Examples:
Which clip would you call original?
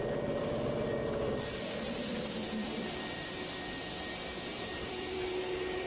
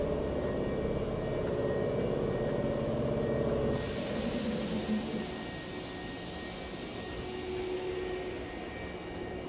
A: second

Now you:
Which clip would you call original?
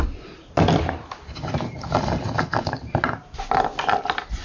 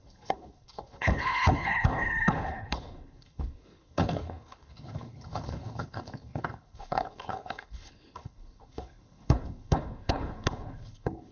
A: first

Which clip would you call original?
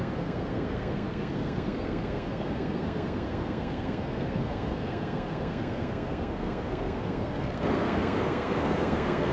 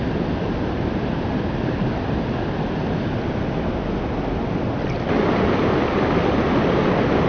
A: second